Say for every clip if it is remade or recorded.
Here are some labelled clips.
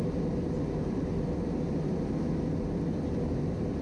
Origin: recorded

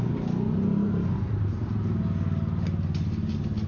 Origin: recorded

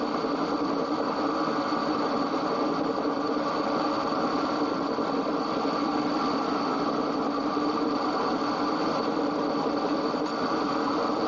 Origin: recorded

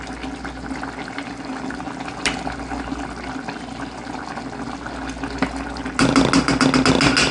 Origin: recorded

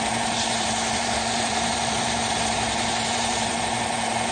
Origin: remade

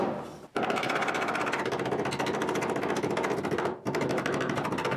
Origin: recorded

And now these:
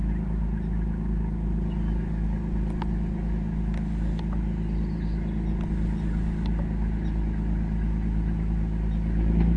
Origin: recorded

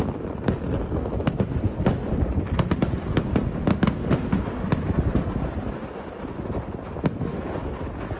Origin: recorded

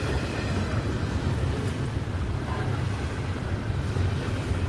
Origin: recorded